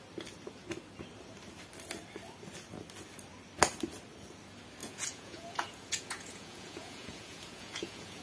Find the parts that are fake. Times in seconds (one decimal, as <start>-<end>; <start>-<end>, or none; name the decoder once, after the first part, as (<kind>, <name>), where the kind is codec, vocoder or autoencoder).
4.8-8.2 (vocoder, Vocos)